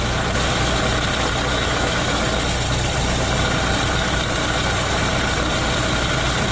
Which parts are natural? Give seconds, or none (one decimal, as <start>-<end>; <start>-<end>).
0.0-1.5; 2.2-6.5

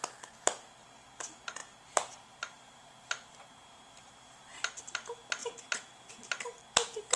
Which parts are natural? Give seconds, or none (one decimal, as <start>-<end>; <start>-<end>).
0.0-1.6; 4.8-7.2

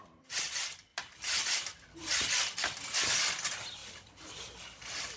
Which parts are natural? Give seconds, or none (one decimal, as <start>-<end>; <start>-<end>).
0.9-3.0; 3.8-4.8

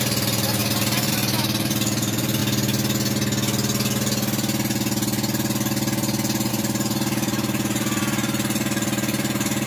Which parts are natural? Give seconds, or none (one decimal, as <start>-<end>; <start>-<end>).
2.4-6.5